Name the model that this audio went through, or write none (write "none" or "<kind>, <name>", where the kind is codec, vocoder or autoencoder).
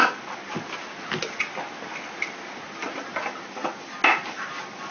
none